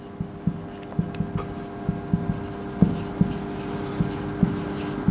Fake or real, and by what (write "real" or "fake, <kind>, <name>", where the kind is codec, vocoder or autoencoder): real